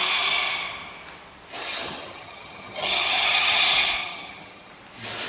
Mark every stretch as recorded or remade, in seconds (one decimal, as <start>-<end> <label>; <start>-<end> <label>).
0.0-1.6 recorded; 1.6-3.6 remade; 3.6-4.0 recorded; 4.0-4.7 remade; 4.7-5.3 recorded